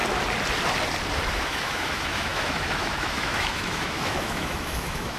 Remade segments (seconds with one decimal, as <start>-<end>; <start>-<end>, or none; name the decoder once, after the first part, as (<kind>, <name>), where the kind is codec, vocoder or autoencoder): 1.3-5.2 (autoencoder, DAC-VAE)